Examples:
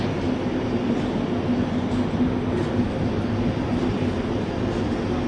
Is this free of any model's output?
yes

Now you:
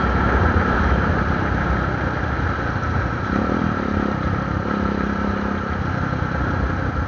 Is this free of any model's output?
yes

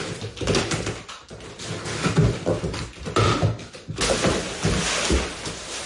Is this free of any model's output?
yes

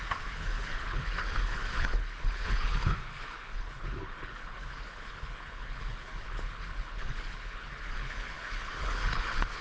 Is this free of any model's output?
no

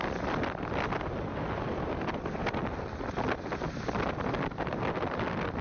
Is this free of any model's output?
yes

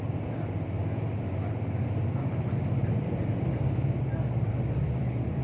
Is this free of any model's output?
no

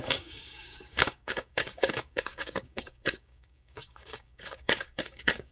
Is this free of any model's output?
no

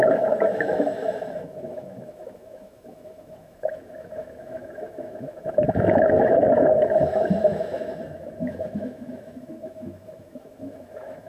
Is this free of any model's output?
no